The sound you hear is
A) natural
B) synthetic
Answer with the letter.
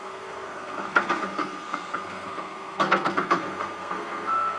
B